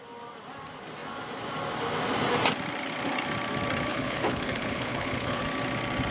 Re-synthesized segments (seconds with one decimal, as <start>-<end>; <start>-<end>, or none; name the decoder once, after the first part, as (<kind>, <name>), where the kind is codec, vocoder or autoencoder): 3.9-5.4 (codec, HILCodec)